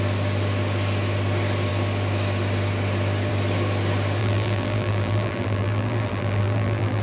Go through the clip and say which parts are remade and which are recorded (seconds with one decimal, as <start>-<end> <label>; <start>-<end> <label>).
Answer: 0.0-4.2 recorded; 4.2-7.0 remade